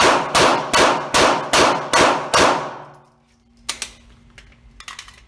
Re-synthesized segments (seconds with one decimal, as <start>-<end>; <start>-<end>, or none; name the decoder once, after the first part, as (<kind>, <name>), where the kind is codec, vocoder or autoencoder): none